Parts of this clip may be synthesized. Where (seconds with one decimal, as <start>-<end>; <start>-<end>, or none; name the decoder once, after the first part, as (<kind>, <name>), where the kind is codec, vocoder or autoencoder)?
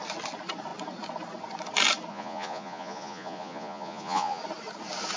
2.1-4.4 (vocoder, Vocos)